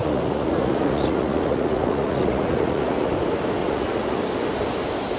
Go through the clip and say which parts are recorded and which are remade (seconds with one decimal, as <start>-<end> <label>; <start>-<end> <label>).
0.0-3.1 remade; 3.1-3.6 recorded; 3.6-4.2 remade; 4.2-5.2 recorded